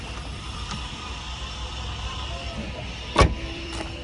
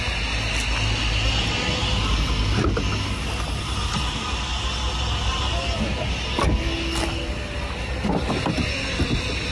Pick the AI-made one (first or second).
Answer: first